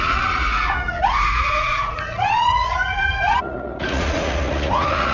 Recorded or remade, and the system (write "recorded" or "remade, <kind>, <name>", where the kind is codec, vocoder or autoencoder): remade, vocoder, Vocos